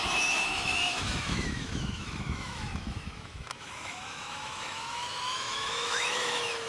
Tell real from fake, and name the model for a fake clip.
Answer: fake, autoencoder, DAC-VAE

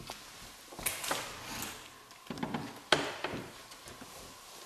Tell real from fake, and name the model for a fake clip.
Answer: real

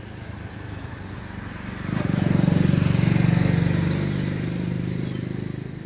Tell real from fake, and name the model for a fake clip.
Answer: real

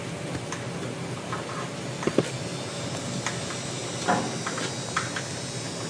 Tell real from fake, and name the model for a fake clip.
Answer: real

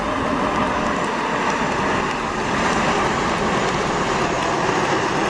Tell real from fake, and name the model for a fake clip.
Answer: real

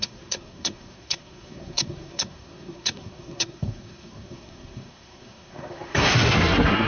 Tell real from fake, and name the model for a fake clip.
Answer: fake, codec, SNAC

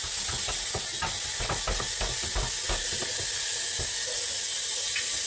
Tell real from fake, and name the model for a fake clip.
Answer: real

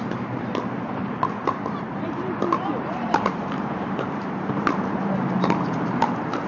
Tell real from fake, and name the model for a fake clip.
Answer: fake, vocoder, BigVGAN v2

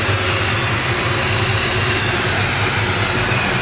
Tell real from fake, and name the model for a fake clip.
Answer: real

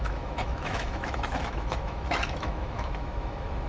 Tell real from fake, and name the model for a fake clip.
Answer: fake, autoencoder, DAC-VAE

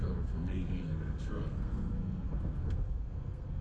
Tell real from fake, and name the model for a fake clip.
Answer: fake, codec, SNAC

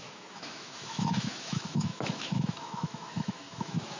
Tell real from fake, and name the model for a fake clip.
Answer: fake, autoencoder, DAC-VAE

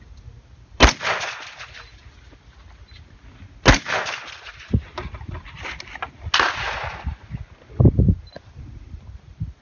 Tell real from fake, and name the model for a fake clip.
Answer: real